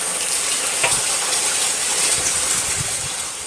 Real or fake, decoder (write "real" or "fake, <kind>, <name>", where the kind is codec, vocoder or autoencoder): real